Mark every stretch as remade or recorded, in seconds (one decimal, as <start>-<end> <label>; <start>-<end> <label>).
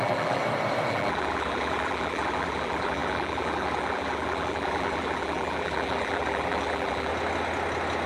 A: 0.0-0.4 remade; 0.4-0.9 recorded; 0.9-7.1 remade; 7.1-8.1 recorded